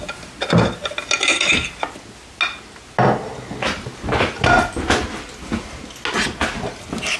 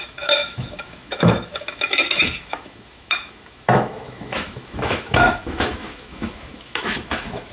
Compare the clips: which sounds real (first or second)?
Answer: first